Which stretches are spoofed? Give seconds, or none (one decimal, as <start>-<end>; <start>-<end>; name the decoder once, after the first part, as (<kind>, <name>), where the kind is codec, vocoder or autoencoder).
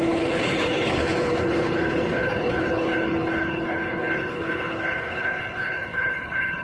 0.0-6.6 (codec, HILCodec)